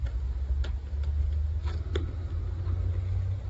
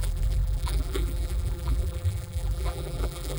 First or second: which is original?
first